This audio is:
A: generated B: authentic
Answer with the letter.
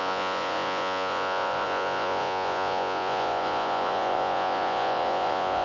A